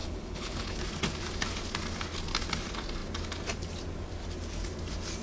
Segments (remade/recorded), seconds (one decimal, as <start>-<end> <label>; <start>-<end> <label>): 0.0-0.8 remade; 0.8-5.2 recorded